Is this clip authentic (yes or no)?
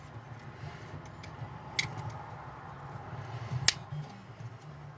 yes